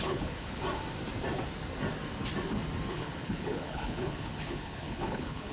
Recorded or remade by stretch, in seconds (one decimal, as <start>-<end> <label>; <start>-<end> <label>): 0.0-0.6 remade; 0.6-2.9 recorded; 2.9-5.5 remade